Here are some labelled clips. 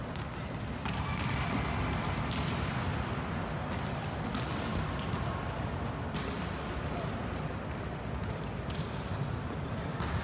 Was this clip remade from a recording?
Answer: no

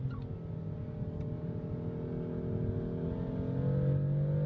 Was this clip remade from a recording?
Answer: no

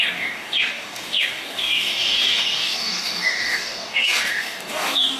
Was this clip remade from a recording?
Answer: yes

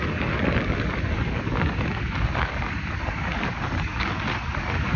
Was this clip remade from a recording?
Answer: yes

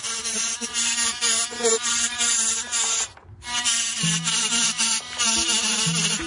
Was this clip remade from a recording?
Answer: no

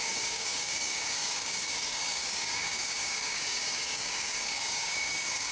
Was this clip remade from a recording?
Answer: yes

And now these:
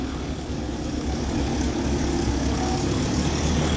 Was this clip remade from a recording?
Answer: yes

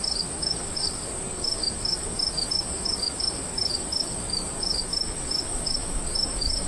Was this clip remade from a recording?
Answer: yes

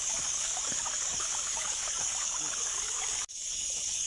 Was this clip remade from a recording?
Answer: yes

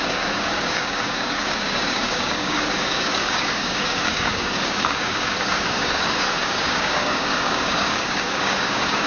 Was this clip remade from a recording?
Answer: yes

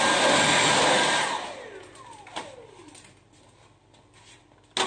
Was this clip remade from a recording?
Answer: no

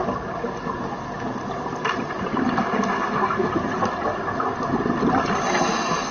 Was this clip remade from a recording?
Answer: no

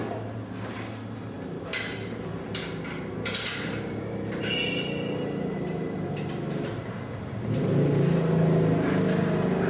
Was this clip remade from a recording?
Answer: no